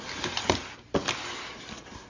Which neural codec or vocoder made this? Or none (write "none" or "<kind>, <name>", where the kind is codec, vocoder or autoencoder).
none